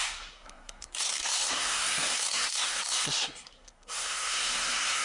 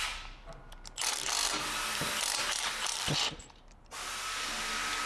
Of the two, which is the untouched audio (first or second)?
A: second